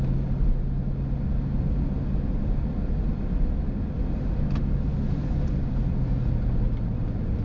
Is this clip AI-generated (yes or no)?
no